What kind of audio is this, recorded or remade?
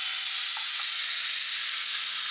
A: recorded